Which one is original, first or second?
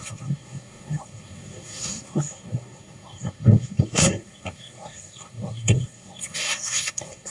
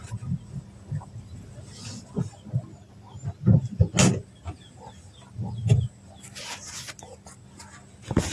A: second